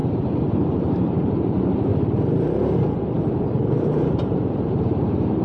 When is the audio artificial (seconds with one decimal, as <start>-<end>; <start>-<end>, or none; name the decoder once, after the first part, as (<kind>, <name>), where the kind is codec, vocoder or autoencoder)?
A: 0.0-1.9 (vocoder, BigVGAN v2); 3.0-5.4